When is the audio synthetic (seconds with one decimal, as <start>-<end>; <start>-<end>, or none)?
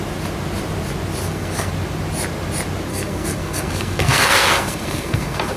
1.2-1.7; 2.9-5.6